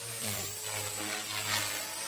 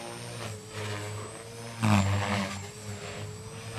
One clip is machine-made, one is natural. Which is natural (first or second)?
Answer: second